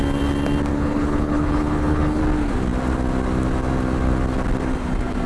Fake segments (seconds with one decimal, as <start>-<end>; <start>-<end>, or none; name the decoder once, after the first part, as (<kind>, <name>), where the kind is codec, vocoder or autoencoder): 0.7-2.2 (codec, HILCodec)